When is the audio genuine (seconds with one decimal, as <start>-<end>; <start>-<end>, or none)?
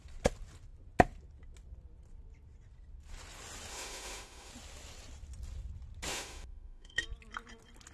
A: 0.0-3.7; 4.5-6.1; 7.0-7.9